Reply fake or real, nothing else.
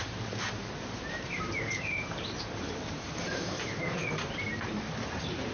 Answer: fake